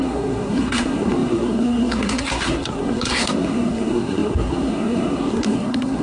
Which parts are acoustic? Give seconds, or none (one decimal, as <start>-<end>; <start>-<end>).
none